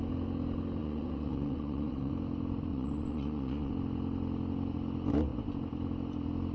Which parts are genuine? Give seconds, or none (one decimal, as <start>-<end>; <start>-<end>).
0.0-0.8; 2.1-2.7; 3.7-6.5